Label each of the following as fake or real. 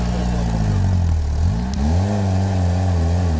real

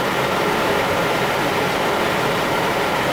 real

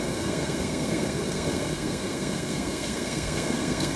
fake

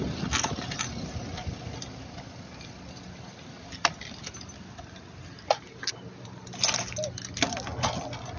real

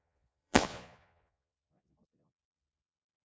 fake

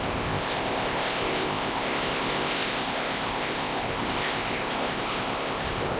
fake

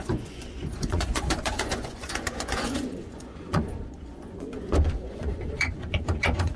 fake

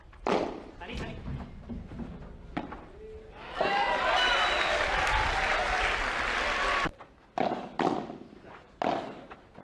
real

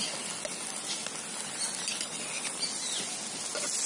real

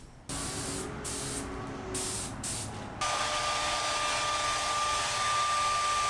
real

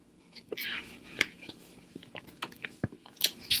fake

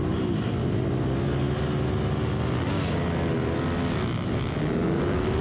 real